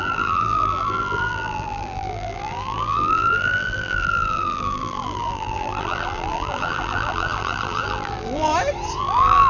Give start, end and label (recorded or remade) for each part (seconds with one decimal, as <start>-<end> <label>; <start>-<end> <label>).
0.0-8.5 remade; 8.5-9.0 recorded; 9.0-9.5 remade